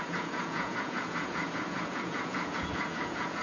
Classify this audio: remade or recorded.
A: remade